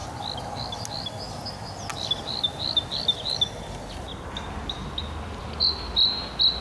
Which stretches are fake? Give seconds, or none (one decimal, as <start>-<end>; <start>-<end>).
1.9-2.9